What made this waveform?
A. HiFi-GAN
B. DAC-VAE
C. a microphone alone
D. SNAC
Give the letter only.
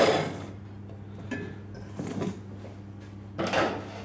C